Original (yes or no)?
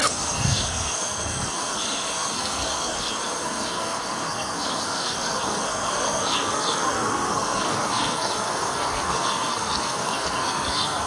no